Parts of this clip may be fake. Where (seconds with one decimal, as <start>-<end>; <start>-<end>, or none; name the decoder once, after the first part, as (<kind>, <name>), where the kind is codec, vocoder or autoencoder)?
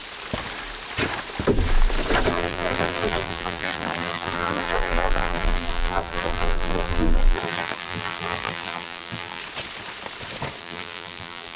2.3-9.4 (vocoder, BigVGAN v2); 10.6-11.6